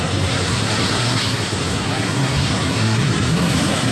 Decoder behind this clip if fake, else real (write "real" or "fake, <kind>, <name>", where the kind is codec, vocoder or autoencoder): fake, codec, SNAC